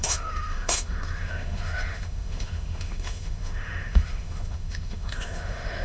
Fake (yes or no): yes